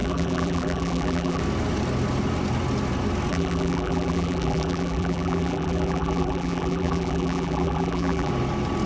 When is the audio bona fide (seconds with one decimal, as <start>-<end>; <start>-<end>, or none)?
1.4-3.3; 8.3-8.9